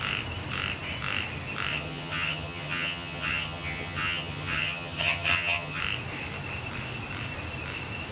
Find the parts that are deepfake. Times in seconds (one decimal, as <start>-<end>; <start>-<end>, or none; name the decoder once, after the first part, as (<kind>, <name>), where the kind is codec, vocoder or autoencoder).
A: 1.7-5.8 (vocoder, HiFi-GAN)